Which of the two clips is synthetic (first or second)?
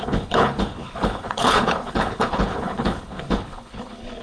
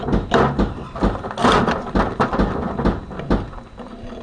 first